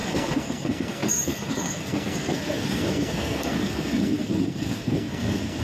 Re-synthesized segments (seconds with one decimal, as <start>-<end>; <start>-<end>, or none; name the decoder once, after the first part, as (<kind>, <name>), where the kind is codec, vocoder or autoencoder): 0.0-5.6 (codec, SNAC)